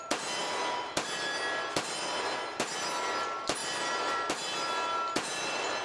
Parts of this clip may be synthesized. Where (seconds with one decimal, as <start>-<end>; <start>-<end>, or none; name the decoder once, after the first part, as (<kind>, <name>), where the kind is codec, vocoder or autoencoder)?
3.6-4.3 (vocoder, BigVGAN v2)